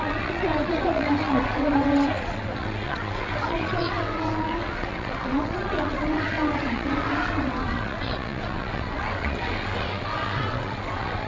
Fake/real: fake